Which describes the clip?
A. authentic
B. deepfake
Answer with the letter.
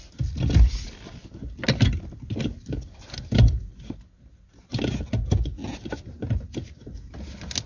A